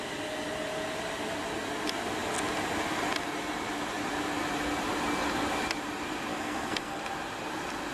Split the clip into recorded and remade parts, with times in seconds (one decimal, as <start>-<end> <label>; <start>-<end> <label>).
0.0-6.3 recorded; 6.3-7.0 remade; 7.0-7.9 recorded